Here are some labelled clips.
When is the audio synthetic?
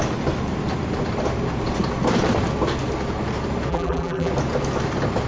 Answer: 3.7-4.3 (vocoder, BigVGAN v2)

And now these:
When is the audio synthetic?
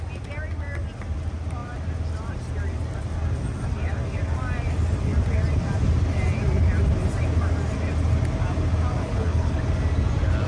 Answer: 9.0-9.6 (codec, HILCodec)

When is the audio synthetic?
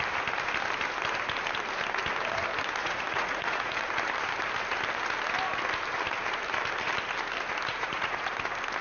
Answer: 2.8-3.8 (vocoder, Vocos); 7.7-8.3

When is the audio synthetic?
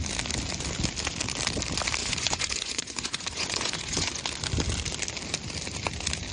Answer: 2.0-4.2 (vocoder, Vocos)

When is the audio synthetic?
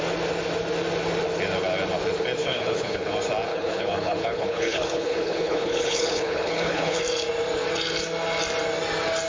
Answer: 2.4-3.1 (codec, HILCodec); 3.5-7.0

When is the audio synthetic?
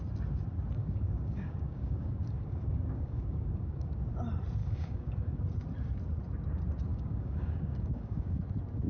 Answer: 0.8-4.0 (codec, DAC); 4.6-5.4; 6.9-8.4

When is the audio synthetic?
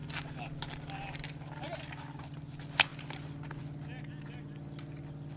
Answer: none